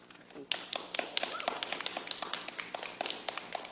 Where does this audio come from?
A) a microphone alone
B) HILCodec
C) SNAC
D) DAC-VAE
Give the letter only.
A